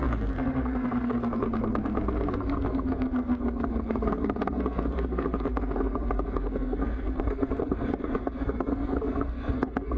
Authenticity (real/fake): fake